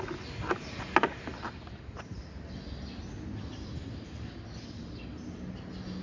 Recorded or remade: recorded